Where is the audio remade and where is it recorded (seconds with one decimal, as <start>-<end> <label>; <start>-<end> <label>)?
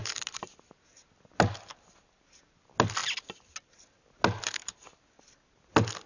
0.0-6.1 recorded